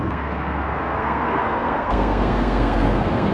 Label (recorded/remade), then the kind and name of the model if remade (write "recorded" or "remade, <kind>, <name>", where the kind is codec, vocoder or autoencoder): remade, codec, SNAC